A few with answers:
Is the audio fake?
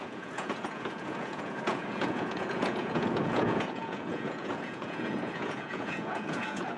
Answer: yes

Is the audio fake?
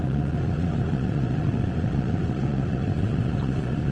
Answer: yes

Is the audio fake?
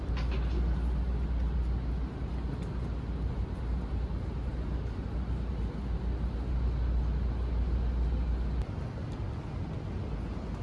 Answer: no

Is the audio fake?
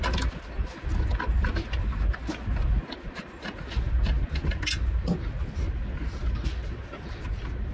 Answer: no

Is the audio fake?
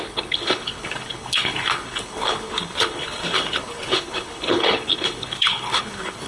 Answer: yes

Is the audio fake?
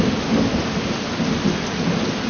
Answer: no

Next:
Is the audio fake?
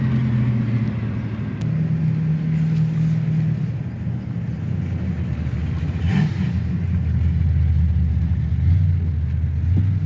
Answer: no